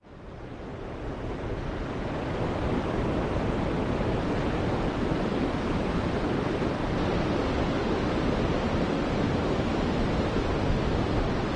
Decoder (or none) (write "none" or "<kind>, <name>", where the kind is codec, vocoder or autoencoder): none